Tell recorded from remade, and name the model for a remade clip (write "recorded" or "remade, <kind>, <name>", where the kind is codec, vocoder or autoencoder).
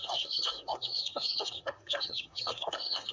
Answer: remade, codec, SNAC